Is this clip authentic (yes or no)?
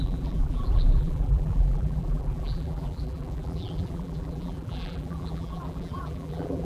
no